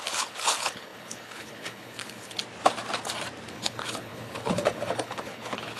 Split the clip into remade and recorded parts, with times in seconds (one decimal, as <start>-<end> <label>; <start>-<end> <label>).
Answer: 0.0-2.4 remade; 2.4-3.5 recorded; 3.5-5.8 remade